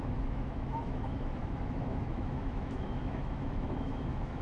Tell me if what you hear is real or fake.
fake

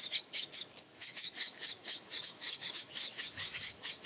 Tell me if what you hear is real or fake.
fake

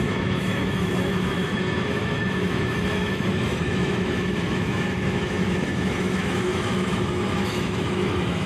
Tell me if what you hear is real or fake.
fake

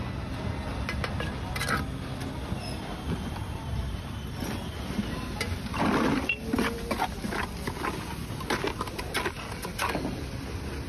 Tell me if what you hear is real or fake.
real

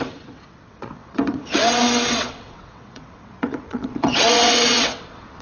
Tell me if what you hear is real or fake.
fake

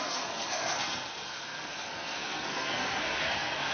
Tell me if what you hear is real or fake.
fake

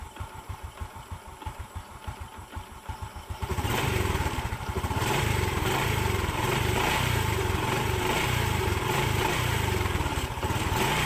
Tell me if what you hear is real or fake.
fake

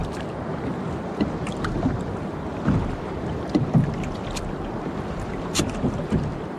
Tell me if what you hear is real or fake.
real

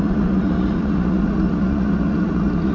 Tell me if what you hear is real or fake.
fake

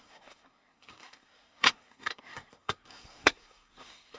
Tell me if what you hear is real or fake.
fake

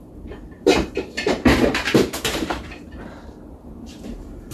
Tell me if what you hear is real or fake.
fake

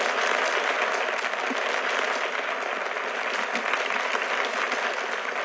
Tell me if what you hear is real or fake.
real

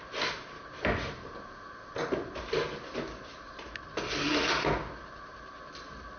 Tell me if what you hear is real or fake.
real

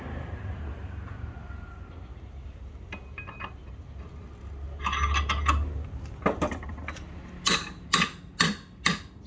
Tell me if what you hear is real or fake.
real